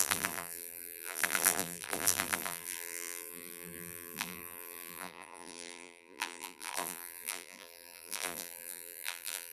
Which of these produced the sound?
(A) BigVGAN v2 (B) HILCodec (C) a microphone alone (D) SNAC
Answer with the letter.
A